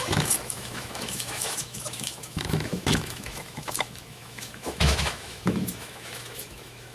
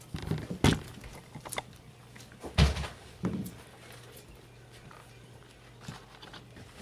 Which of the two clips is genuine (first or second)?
second